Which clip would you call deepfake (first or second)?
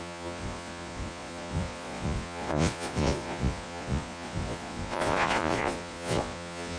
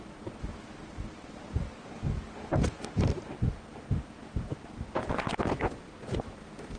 first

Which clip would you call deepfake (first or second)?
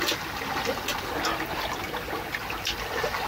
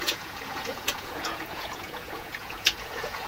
second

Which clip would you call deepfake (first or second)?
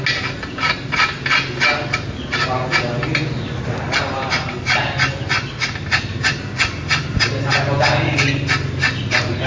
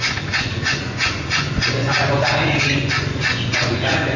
second